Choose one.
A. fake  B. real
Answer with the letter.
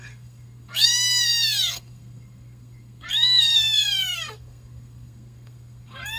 A